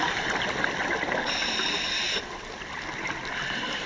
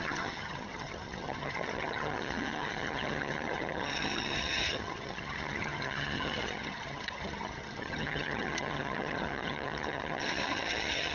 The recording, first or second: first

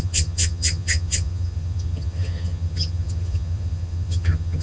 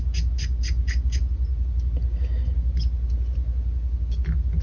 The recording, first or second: second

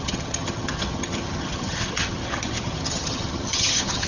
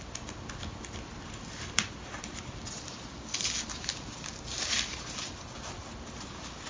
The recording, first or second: second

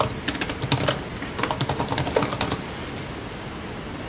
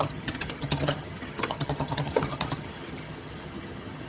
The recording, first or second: first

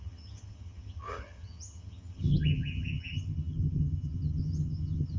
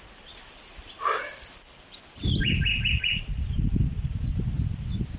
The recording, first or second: second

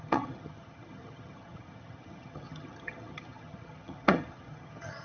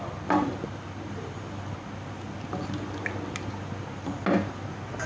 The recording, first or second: second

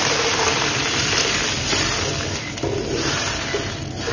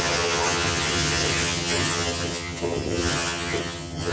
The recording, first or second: first